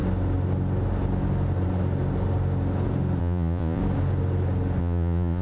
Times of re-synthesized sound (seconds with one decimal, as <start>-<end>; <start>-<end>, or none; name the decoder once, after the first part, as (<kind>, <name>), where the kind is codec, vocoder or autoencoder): 3.2-3.8 (vocoder, Vocos); 4.8-5.4